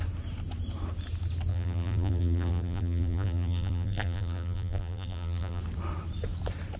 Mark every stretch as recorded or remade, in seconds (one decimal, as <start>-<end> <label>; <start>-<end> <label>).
0.0-1.5 recorded; 1.5-5.6 remade; 5.6-6.8 recorded